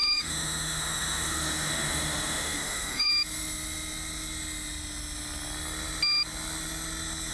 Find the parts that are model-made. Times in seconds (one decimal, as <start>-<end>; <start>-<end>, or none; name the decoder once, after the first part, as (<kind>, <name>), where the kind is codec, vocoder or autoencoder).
0.0-3.1 (autoencoder, DAC-VAE)